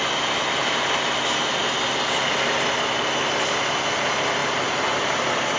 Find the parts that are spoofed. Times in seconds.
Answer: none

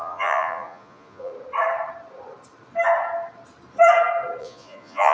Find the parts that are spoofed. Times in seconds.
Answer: 0.0-1.3 (vocoder, Vocos); 4.4-5.1

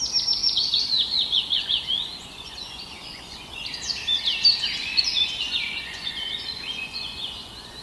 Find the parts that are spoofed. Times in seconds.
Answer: 0.4-3.6 (vocoder, Vocos); 4.8-7.8

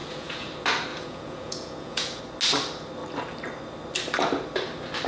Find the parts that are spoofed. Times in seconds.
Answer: 0.0-0.5 (vocoder, Vocos); 0.9-2.2